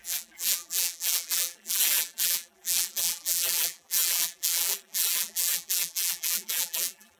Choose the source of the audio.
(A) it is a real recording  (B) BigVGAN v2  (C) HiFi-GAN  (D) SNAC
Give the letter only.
B